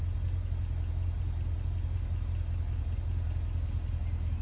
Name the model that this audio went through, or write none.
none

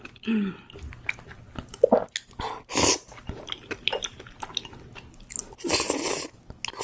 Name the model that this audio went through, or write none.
none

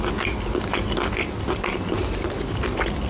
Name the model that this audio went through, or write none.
none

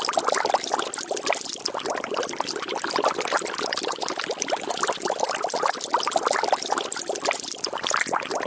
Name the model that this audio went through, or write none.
none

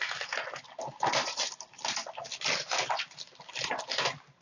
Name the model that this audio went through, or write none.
none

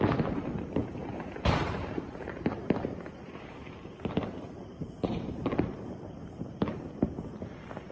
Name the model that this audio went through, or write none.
vocoder, BigVGAN v2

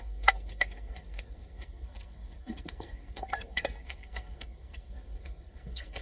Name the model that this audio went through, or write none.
codec, SNAC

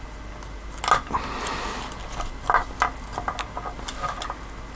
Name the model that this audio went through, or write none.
none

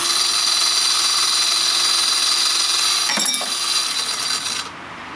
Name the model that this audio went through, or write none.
none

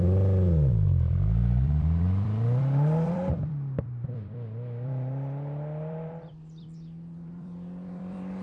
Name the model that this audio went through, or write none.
vocoder, BigVGAN v2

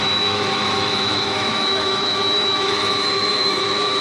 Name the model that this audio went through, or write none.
autoencoder, DAC-VAE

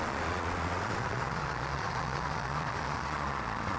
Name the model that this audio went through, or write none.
vocoder, Vocos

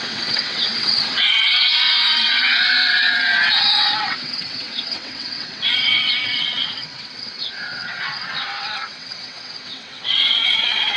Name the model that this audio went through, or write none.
vocoder, WaveNeXt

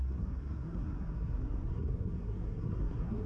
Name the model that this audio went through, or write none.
codec, SNAC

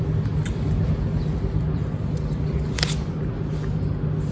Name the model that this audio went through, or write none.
none